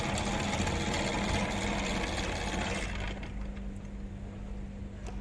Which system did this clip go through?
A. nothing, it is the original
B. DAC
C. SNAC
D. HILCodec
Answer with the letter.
A